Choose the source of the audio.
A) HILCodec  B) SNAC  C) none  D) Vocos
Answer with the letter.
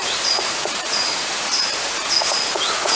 D